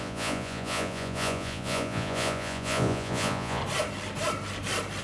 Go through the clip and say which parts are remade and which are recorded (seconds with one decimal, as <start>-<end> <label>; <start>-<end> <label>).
0.0-3.6 remade; 3.6-5.0 recorded